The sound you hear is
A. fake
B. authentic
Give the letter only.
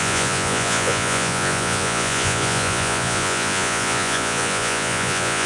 A